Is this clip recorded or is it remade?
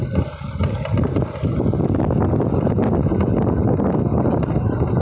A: recorded